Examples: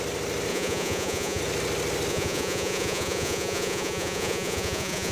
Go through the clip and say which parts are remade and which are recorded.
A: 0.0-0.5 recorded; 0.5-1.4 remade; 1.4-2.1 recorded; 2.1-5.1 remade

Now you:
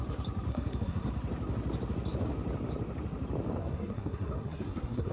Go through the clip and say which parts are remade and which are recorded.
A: 0.0-0.5 recorded; 0.5-1.1 remade; 1.1-3.6 recorded; 3.6-5.1 remade

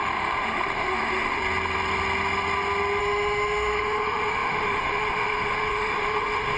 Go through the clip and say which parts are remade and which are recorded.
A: 0.0-1.4 remade; 1.4-3.0 recorded; 3.0-6.6 remade